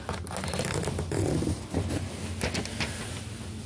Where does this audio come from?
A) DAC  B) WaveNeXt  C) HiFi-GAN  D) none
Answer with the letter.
D